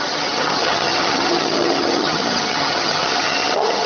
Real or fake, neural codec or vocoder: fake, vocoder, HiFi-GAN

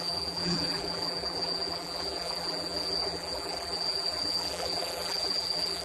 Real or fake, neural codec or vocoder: fake, vocoder, BigVGAN v2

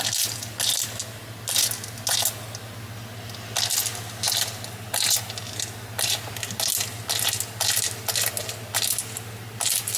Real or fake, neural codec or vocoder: real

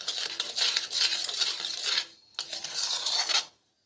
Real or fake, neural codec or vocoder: real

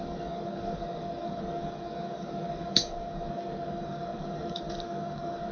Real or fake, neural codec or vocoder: fake, codec, DAC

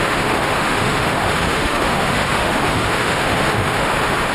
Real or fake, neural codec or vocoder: fake, autoencoder, DAC-VAE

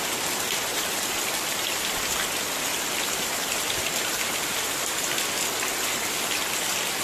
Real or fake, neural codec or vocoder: real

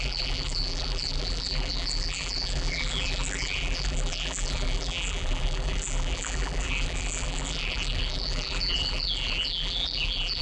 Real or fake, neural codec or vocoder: fake, vocoder, BigVGAN v2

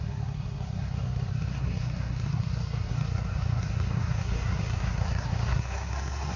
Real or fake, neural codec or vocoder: fake, codec, SNAC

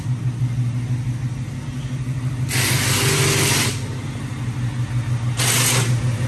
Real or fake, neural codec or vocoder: real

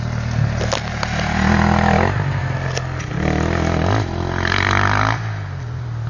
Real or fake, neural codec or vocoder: real